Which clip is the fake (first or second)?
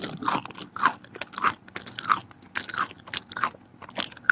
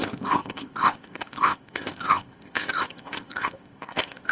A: second